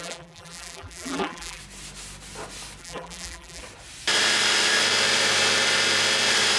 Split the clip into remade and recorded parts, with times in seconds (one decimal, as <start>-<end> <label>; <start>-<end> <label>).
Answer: 0.0-1.6 remade; 1.6-2.8 recorded; 2.8-3.6 remade; 3.6-6.6 recorded